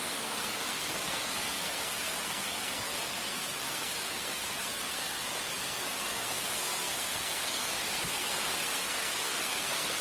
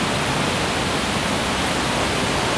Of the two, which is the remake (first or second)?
first